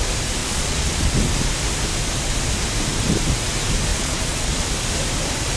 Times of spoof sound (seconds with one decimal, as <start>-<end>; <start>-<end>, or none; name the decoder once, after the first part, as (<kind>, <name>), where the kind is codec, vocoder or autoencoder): 0.4-1.0 (vocoder, Vocos); 3.9-4.7